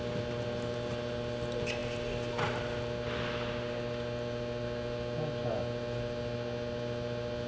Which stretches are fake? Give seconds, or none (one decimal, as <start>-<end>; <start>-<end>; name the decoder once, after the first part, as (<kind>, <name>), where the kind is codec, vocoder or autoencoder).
none